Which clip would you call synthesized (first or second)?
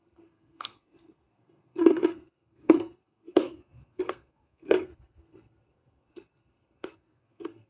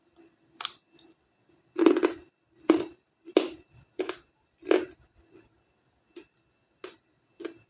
first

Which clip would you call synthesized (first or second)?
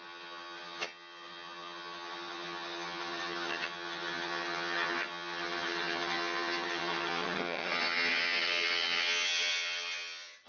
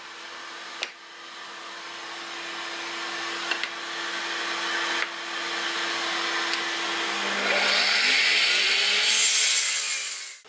first